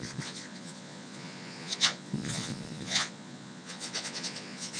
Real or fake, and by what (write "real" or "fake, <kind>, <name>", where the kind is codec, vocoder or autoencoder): fake, vocoder, Vocos